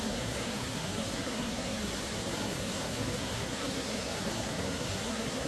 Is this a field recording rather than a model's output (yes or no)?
no